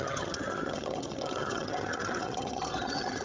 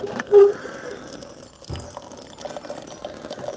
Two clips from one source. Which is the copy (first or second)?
first